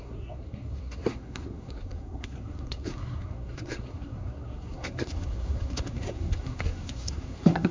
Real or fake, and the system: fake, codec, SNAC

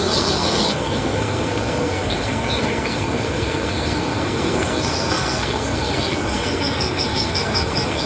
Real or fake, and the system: fake, codec, SNAC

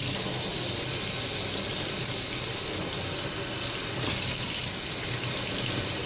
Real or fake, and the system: real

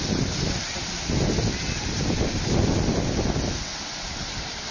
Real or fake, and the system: real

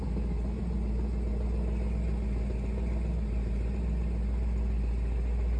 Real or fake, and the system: real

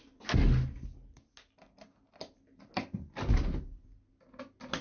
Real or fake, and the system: real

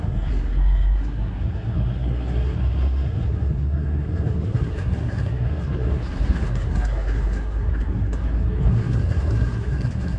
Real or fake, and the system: fake, codec, SNAC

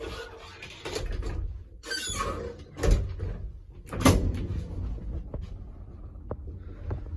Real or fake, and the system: real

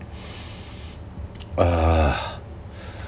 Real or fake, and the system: real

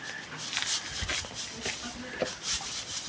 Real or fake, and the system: real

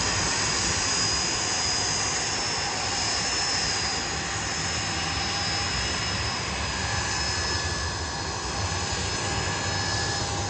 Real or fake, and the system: real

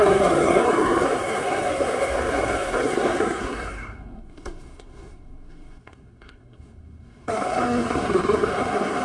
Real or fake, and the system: fake, codec, SNAC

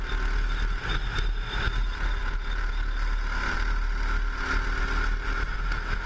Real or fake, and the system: real